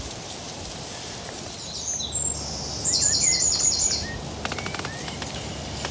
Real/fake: real